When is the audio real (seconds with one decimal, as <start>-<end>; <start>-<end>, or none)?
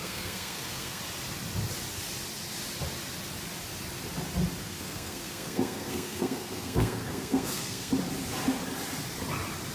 1.0-4.6; 7.9-9.7